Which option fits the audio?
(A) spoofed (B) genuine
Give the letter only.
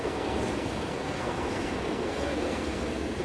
A